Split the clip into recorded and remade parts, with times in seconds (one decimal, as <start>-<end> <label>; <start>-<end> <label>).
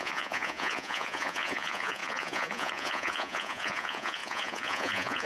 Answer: 0.0-5.3 remade